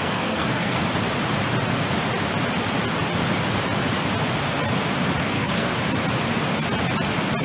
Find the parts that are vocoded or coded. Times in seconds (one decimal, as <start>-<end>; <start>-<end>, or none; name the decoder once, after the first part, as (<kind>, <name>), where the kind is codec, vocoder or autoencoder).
0.0-0.8 (codec, SNAC); 5.2-5.7